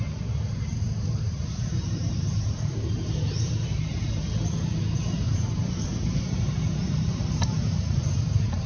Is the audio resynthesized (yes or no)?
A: yes